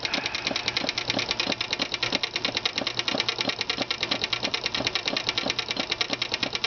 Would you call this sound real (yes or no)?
yes